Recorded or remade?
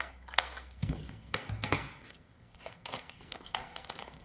remade